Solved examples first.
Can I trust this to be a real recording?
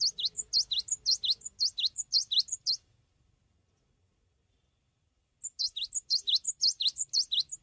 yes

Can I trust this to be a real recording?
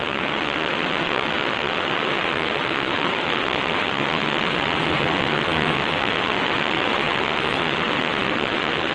no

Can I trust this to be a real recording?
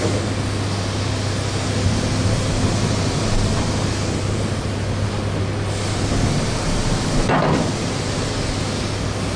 yes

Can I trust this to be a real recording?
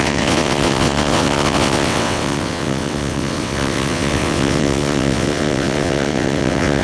no